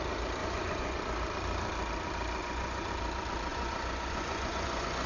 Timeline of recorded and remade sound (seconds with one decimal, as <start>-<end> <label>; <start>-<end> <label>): 0.0-0.4 recorded; 0.4-1.0 remade; 1.0-2.4 recorded; 2.4-2.9 remade; 2.9-3.5 recorded; 3.5-5.1 remade